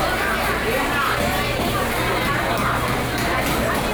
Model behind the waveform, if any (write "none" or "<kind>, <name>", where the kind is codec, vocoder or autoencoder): none